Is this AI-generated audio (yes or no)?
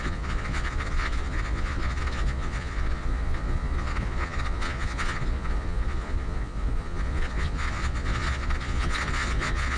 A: yes